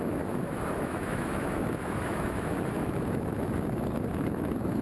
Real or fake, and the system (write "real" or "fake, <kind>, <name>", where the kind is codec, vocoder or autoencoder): fake, autoencoder, DAC-VAE